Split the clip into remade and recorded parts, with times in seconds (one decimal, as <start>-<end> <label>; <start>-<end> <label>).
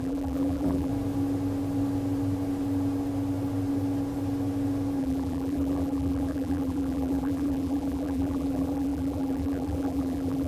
0.0-0.9 remade; 0.9-5.0 recorded; 5.0-10.5 remade